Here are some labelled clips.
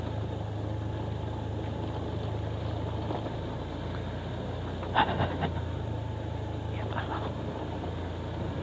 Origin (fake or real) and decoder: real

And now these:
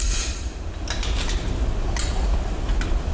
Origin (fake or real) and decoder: real